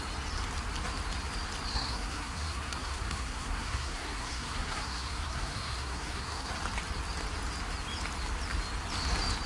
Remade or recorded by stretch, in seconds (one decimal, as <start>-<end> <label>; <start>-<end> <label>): 0.0-1.7 recorded; 1.7-6.5 remade; 6.5-9.5 recorded